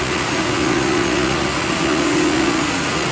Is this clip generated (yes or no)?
yes